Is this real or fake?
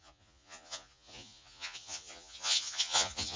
fake